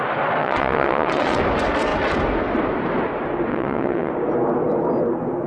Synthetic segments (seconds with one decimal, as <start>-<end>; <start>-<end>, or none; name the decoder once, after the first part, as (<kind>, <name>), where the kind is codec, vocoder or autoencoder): 0.4-1.4 (vocoder, WaveNeXt); 3.5-4.1